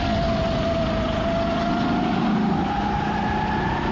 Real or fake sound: real